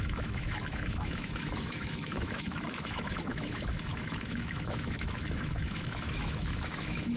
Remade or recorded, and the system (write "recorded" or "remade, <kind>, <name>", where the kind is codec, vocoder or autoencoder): remade, autoencoder, DAC-VAE